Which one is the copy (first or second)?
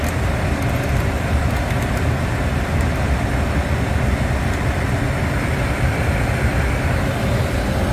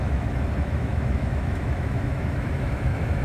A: second